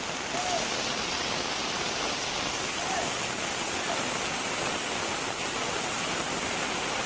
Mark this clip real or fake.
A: real